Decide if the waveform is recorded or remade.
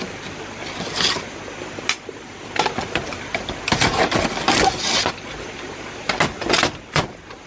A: recorded